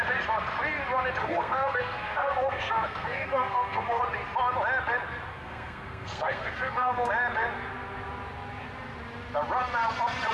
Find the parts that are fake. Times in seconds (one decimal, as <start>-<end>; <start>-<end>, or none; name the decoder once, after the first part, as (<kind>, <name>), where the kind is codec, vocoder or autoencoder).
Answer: 1.2-4.0 (codec, SNAC); 5.3-7.1